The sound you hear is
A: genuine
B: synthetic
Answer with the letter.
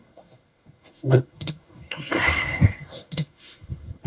B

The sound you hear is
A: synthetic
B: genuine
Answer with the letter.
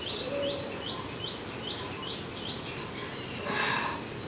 B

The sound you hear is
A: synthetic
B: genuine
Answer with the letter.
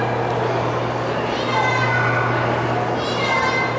B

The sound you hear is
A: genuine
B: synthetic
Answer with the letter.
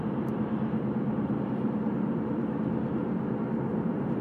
B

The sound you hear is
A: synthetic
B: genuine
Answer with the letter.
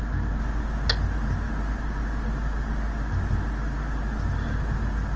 B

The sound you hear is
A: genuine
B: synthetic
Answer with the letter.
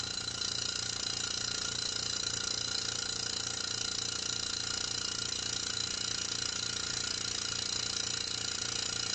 A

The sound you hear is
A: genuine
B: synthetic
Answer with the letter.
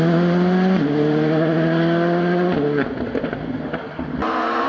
A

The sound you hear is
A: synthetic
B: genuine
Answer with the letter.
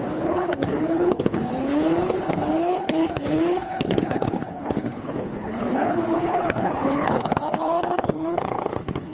A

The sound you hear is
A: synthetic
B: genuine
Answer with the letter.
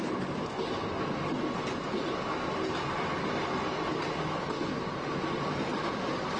B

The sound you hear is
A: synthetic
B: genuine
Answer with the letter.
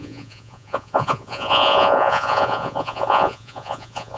A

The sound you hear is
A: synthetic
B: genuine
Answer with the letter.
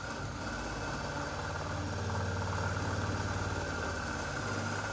B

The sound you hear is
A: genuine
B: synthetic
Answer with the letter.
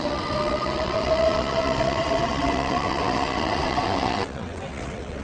B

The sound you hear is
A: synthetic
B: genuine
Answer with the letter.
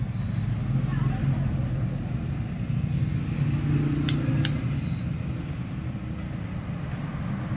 B